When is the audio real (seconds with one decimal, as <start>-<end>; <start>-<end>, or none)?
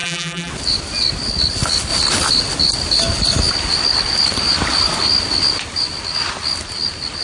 0.5-7.2